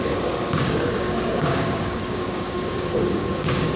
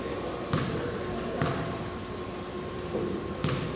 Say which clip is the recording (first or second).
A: second